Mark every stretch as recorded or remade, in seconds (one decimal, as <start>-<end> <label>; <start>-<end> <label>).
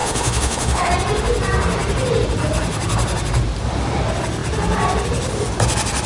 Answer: 0.0-0.9 remade; 0.9-6.1 recorded